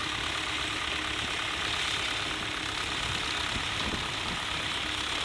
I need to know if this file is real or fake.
real